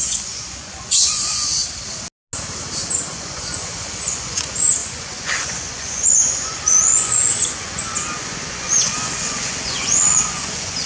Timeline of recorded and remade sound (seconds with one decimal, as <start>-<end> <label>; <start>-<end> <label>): 0.0-1.5 remade; 1.5-3.1 recorded; 3.1-10.9 remade